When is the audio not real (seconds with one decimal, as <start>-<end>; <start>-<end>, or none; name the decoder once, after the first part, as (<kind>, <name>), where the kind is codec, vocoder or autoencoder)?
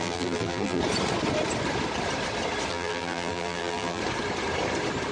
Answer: 0.0-0.8 (vocoder, BigVGAN v2); 2.7-4.0